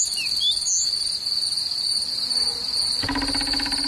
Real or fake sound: real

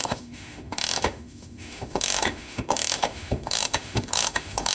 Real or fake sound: fake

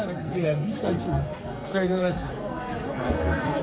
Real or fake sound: fake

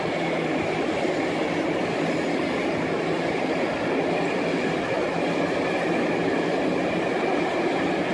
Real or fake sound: real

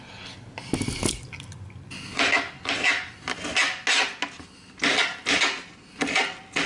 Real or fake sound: real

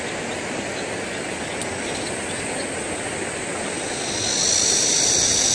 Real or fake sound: real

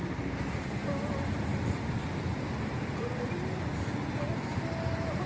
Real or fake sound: real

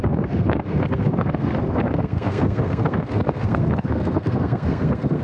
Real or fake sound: fake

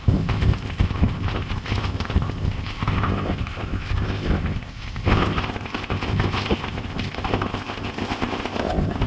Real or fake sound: fake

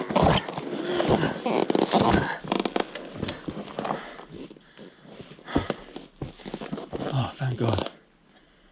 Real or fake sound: real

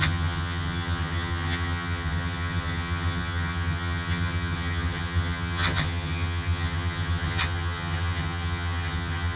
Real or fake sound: fake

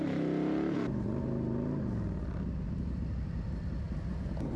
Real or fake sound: real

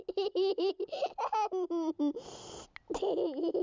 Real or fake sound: real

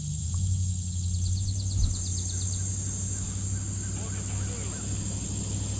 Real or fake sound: real